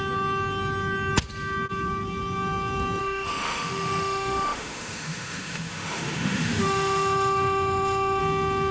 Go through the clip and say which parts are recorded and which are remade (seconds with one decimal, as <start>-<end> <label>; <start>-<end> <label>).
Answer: 0.0-3.0 recorded; 3.0-8.2 remade; 8.2-8.7 recorded